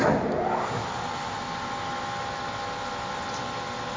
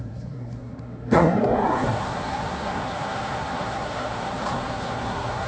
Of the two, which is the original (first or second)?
first